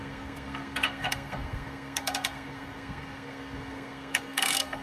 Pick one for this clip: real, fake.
fake